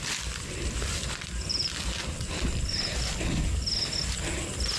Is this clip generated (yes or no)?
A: no